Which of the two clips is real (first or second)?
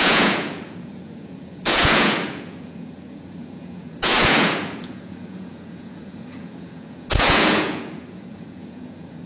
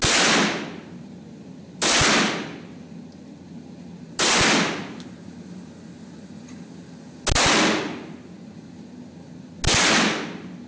second